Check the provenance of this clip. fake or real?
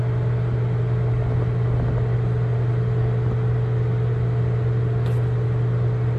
real